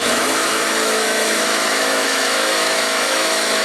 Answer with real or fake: fake